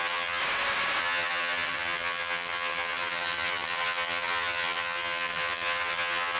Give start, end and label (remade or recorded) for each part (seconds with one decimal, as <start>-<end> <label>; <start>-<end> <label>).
0.0-0.4 remade; 0.4-1.0 recorded; 1.0-6.4 remade